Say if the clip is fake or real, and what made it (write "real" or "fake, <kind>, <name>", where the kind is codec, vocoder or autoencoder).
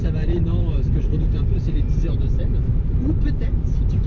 fake, vocoder, BigVGAN v2